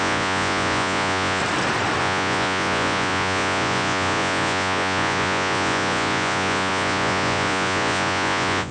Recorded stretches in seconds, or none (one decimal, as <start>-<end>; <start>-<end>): 1.4-2.0